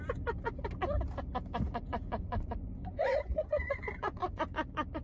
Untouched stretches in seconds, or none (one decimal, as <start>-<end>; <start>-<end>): 0.0-1.7; 4.4-5.0